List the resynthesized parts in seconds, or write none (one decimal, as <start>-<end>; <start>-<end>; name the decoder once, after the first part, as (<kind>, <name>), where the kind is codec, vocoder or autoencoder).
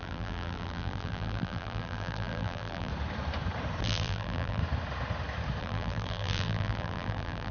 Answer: 0.0-2.9 (vocoder, BigVGAN v2); 3.8-4.6; 5.6-7.5